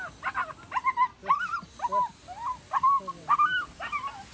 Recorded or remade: recorded